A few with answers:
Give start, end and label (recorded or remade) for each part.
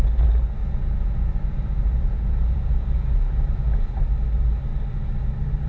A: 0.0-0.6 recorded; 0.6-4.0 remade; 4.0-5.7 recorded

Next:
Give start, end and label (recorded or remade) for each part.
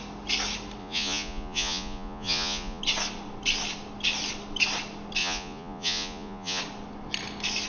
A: 0.0-0.8 recorded; 0.8-2.8 remade; 2.8-5.2 recorded; 5.2-6.6 remade; 6.6-7.7 recorded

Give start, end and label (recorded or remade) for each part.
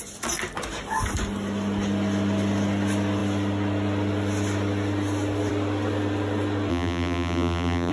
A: 0.0-6.7 recorded; 6.7-7.9 remade